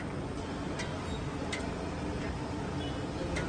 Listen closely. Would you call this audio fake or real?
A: real